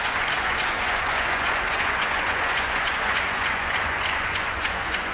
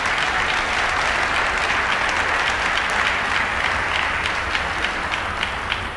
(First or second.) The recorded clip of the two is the second